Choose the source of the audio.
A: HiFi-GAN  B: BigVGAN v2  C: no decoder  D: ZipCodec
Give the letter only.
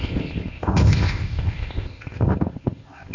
D